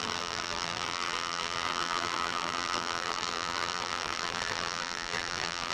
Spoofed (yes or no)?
yes